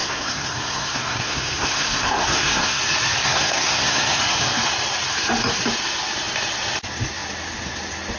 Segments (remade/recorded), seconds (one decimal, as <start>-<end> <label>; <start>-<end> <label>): 0.0-2.8 remade; 2.8-3.2 recorded; 3.2-4.2 remade; 4.2-8.2 recorded